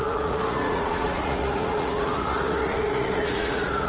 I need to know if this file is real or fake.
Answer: fake